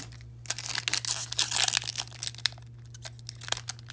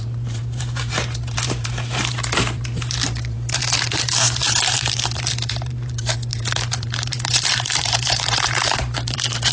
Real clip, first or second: first